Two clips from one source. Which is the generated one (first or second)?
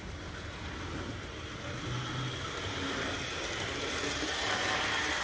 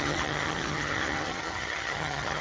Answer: second